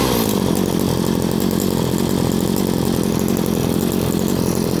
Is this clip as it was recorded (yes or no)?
yes